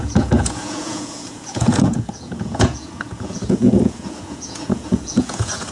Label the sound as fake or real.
fake